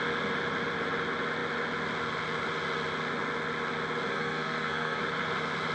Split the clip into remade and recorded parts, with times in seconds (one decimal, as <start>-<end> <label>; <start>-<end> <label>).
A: 0.0-4.1 recorded; 4.1-5.0 remade; 5.0-5.7 recorded

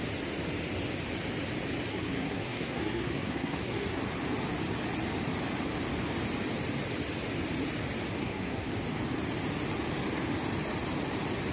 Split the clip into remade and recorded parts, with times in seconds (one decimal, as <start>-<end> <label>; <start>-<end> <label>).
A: 0.0-1.9 recorded; 1.9-4.0 remade; 4.0-8.2 recorded; 8.2-8.7 remade; 8.7-11.5 recorded

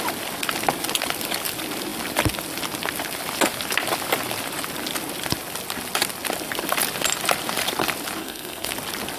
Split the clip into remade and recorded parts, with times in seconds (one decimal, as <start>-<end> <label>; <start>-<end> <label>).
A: 0.0-8.2 recorded; 8.2-8.7 remade; 8.7-9.2 recorded

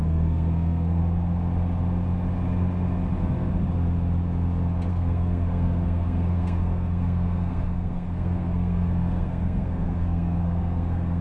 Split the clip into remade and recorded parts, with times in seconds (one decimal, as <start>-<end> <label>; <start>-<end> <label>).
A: 0.0-1.0 remade; 1.0-4.9 recorded; 4.9-11.2 remade